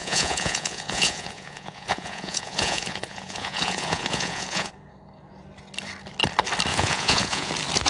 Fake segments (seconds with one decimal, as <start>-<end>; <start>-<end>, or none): 0.0-4.7; 6.7-7.5